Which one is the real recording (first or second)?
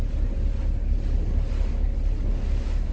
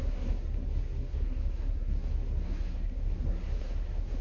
first